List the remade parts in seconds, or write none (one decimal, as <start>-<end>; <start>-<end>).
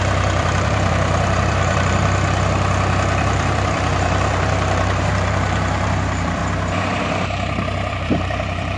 0.0-2.0; 3.2-6.4; 7.9-8.8